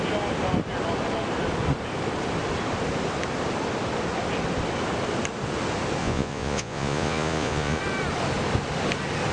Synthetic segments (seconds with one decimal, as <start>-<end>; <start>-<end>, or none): 6.0-7.8